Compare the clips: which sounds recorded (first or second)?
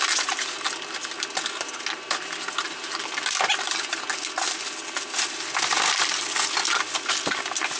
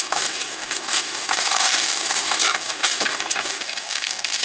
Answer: first